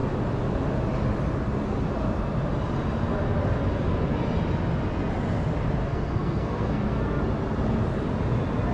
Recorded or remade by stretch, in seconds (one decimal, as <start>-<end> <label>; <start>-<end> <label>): 0.0-5.8 recorded; 5.8-7.2 remade; 7.2-8.7 recorded